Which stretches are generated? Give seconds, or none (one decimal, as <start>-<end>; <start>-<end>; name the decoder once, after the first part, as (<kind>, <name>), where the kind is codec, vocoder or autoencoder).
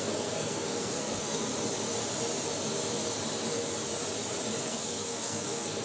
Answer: 0.0-1.5 (codec, SNAC); 4.6-5.8